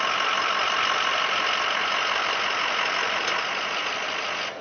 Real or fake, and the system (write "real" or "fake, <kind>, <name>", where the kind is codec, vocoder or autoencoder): real